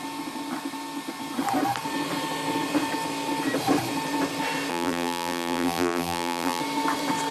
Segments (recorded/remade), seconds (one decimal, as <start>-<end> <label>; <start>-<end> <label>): 0.0-4.7 recorded; 4.7-6.6 remade; 6.6-7.3 recorded